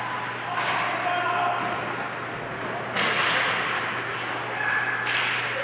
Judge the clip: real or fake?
real